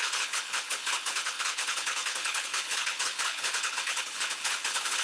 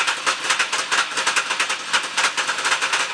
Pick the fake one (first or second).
first